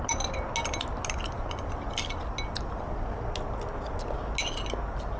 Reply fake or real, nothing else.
real